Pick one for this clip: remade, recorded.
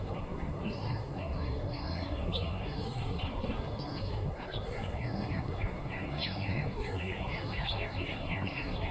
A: remade